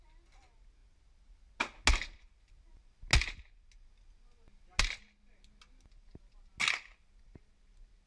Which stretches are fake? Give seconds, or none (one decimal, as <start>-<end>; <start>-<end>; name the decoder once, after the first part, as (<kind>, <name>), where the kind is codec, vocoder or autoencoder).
none

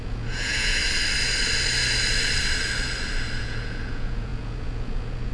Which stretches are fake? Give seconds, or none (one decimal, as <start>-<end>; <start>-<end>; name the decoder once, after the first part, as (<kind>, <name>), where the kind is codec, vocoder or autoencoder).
0.0-0.8 (vocoder, Vocos); 3.4-5.3

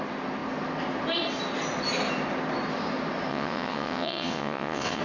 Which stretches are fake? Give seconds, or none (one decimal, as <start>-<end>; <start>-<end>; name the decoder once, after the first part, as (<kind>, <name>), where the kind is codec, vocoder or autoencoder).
3.3-5.0 (vocoder, WaveNeXt)

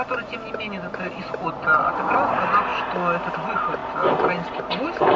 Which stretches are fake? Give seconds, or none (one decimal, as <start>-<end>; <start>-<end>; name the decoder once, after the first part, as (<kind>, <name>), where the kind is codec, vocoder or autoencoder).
none

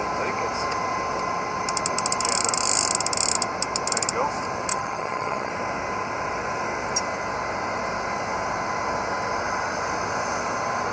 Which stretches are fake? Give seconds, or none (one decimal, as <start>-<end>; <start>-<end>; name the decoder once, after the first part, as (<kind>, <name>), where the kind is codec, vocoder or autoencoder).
4.7-5.5 (vocoder, HiFi-GAN)

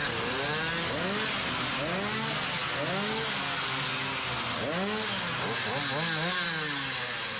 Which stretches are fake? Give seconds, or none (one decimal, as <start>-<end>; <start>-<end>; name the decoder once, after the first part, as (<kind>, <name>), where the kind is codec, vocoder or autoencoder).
none

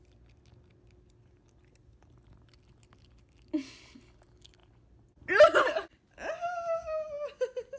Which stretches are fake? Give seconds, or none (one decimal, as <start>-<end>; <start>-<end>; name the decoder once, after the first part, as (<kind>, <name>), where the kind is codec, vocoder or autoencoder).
none